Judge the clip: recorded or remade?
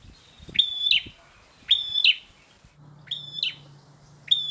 recorded